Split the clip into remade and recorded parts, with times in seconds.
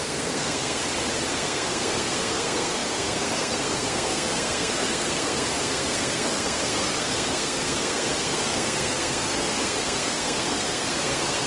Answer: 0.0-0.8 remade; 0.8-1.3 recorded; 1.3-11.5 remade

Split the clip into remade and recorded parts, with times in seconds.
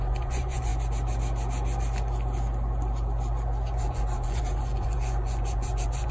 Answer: 0.0-0.7 remade; 0.7-3.8 recorded; 3.8-6.1 remade